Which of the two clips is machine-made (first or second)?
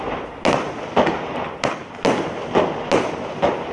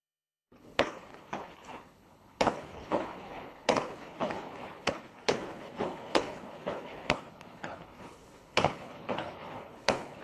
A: second